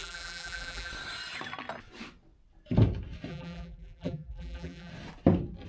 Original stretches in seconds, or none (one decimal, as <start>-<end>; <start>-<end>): 0.9-3.3; 4.9-5.7